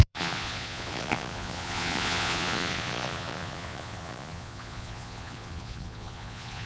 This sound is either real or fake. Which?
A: fake